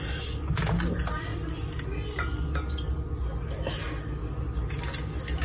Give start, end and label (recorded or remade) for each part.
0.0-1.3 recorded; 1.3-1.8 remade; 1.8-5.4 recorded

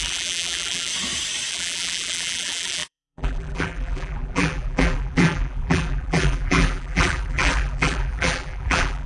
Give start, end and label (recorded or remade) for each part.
0.0-0.9 remade; 0.9-1.5 recorded; 1.5-9.1 remade

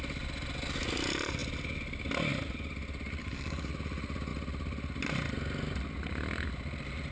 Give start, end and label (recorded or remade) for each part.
0.0-3.2 recorded; 3.2-3.7 remade; 3.7-7.1 recorded